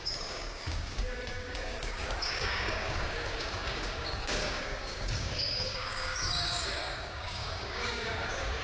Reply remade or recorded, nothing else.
remade